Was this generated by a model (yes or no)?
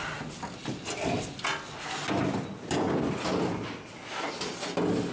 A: no